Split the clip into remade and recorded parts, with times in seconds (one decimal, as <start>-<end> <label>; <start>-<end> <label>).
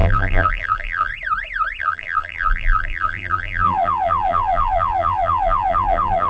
0.0-1.1 remade; 1.1-1.8 recorded; 1.8-6.3 remade